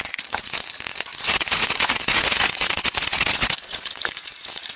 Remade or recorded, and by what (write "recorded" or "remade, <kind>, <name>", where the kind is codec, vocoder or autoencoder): remade, vocoder, Vocos